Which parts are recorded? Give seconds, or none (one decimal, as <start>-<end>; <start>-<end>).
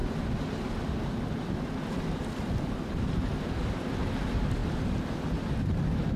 0.0-6.2